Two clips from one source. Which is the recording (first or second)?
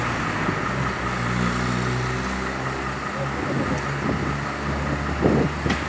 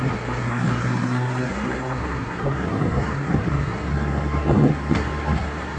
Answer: first